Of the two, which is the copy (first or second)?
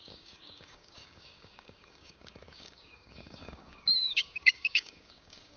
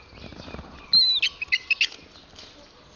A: first